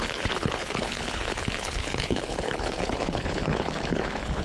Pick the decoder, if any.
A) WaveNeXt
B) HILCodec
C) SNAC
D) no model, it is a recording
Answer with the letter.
B